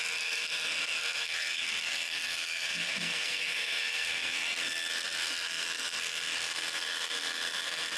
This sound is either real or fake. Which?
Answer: fake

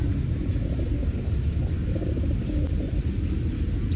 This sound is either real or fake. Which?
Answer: real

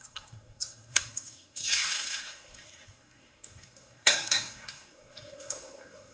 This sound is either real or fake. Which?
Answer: fake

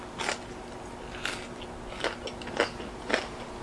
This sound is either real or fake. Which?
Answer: real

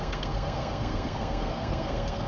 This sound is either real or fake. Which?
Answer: fake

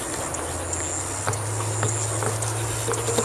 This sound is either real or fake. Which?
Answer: real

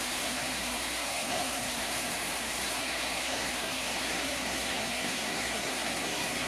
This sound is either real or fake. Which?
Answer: fake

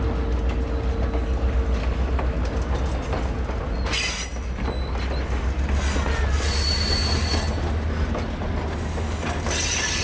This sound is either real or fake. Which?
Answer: real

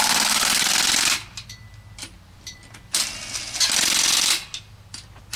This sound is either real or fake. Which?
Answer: real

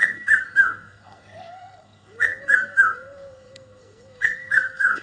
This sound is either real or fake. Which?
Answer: fake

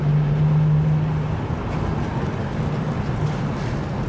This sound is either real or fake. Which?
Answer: real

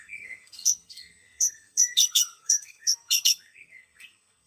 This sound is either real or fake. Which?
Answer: fake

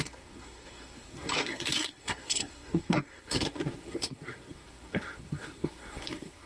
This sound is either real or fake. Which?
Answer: fake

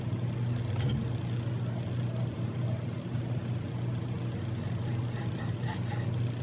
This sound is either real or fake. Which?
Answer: real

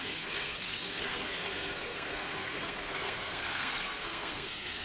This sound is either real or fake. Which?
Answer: fake